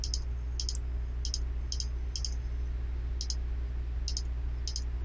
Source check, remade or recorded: recorded